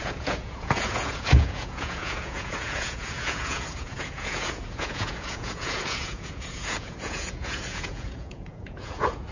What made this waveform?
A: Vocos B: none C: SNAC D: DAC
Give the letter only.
A